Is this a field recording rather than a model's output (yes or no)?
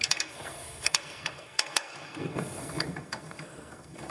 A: no